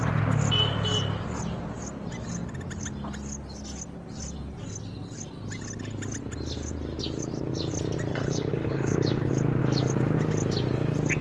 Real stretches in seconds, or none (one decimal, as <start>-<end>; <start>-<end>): 0.0-8.1; 9.3-11.2